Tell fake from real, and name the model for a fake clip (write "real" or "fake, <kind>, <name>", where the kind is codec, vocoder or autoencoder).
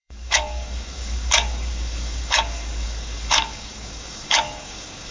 fake, codec, DAC